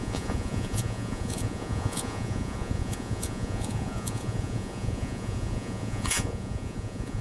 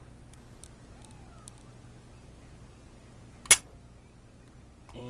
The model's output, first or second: first